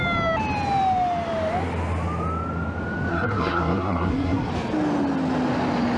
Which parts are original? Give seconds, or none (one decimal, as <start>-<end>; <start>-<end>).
0.0-3.1; 4.5-6.0